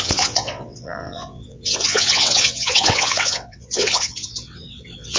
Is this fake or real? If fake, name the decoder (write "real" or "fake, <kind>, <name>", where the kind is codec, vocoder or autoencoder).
fake, vocoder, WaveNeXt